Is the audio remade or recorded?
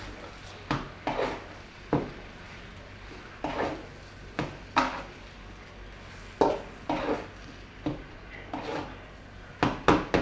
recorded